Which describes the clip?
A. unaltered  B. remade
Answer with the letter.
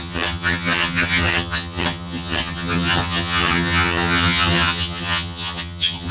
B